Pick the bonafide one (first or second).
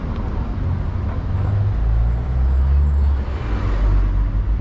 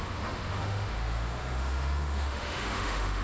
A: first